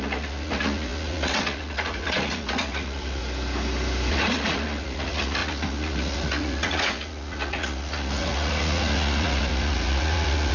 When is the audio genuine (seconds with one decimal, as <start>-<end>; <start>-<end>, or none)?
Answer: 3.2-4.1